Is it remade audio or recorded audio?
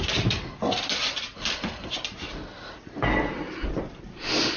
recorded